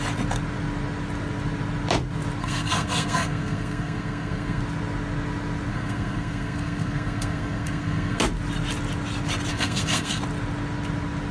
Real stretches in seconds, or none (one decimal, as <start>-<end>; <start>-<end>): 0.0-2.4; 4.6-5.7; 8.2-9.5; 10.2-11.3